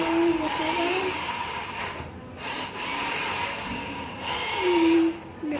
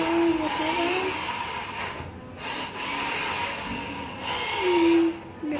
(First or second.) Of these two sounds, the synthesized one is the first